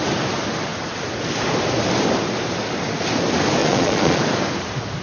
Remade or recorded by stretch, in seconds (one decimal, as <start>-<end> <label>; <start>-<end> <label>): 0.0-3.6 recorded; 3.6-4.2 remade; 4.2-5.0 recorded